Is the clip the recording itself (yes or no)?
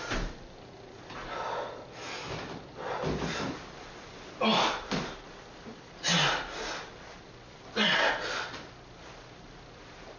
yes